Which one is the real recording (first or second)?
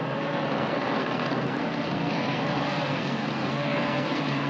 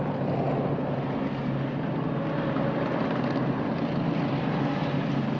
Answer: second